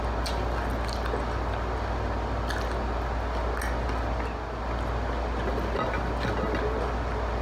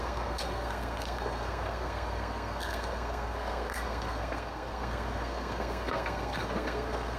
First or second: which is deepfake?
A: second